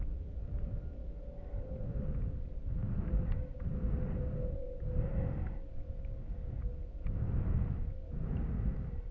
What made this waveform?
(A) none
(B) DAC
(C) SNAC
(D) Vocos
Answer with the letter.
A